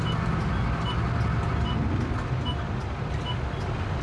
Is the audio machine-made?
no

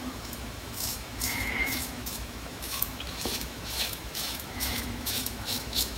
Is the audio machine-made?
yes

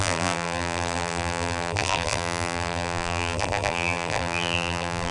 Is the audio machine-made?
yes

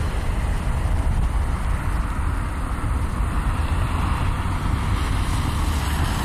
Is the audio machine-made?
no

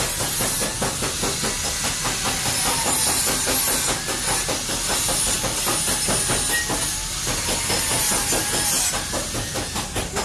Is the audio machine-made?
no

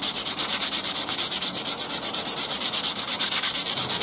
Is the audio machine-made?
no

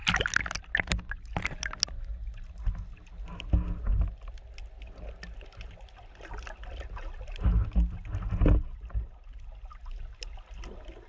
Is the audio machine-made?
no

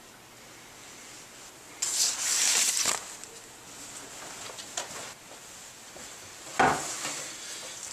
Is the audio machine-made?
no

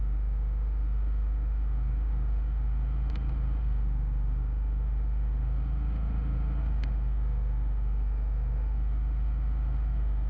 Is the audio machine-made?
yes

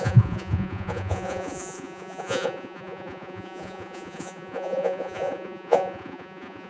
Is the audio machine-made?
yes